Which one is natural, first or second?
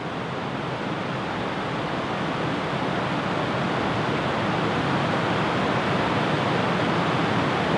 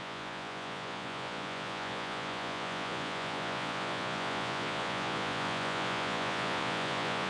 first